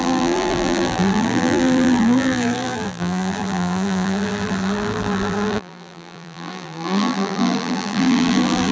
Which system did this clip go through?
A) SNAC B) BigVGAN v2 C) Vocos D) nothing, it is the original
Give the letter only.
B